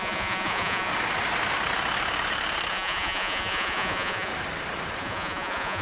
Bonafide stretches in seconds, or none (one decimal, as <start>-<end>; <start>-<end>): 0.9-2.7; 4.3-5.0